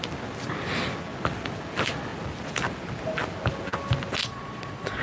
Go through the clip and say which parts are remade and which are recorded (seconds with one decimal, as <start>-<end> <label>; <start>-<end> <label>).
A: 0.0-4.2 recorded; 4.2-5.0 remade